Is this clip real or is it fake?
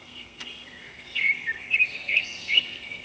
fake